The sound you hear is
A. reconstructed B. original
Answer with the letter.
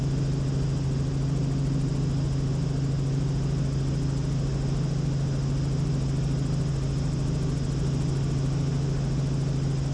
B